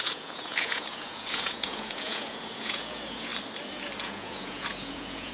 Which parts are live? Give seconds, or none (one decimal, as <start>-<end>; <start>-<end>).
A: 3.3-4.0